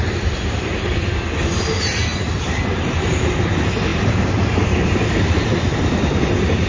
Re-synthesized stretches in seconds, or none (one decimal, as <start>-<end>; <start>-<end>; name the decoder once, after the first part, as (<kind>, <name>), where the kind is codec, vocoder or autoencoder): 0.0-0.9 (vocoder, BigVGAN v2); 2.1-3.4; 3.9-5.5